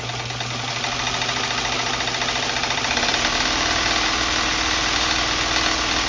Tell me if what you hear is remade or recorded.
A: recorded